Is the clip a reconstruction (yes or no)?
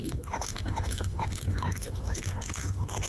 yes